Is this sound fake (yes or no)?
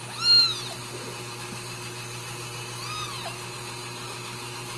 no